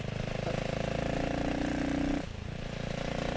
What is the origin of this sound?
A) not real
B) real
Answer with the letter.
B